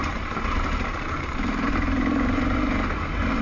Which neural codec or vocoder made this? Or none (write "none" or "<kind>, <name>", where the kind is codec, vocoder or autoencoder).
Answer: vocoder, BigVGAN v2